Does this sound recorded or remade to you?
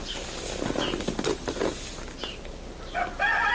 recorded